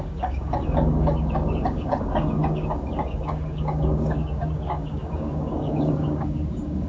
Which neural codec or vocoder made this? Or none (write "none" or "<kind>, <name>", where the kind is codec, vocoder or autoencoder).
codec, DAC